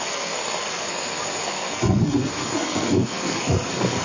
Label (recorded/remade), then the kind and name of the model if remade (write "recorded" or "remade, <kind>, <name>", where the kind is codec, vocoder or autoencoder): remade, codec, SNAC